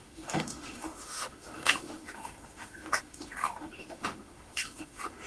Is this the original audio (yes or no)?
no